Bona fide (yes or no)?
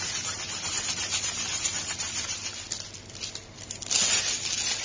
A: yes